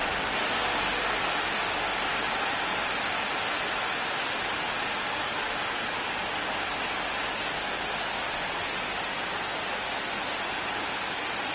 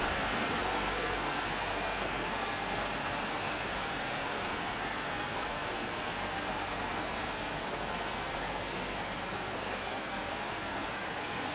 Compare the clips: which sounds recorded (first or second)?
first